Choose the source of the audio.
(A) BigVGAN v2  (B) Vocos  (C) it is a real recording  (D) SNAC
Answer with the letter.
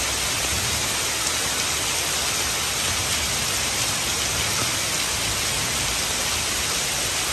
C